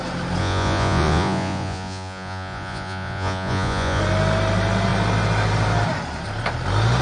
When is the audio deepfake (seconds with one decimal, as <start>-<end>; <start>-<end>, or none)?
0.4-4.0